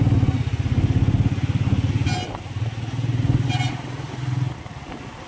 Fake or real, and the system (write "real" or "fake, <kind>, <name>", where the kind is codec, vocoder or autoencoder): real